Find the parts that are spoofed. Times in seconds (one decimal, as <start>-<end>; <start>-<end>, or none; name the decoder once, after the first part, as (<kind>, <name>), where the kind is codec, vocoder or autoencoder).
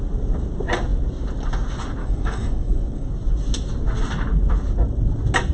2.0-3.1 (codec, DAC)